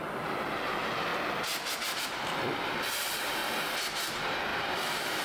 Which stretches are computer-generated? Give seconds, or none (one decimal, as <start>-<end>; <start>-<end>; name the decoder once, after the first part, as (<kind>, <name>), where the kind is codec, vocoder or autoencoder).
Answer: 0.0-1.1 (vocoder, BigVGAN v2); 2.0-3.4; 4.0-5.2